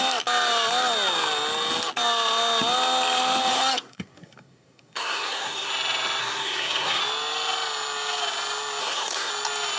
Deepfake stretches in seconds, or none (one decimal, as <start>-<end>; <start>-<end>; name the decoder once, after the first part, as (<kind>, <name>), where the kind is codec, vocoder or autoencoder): 3.5-5.7 (codec, SNAC); 6.2-7.0; 8.8-9.3